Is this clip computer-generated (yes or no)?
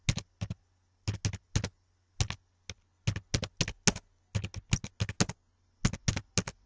no